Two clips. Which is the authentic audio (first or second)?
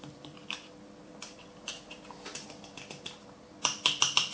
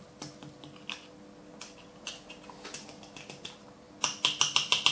second